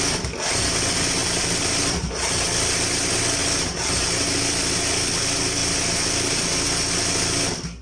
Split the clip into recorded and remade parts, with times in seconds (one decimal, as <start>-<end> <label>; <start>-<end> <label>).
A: 0.0-7.8 recorded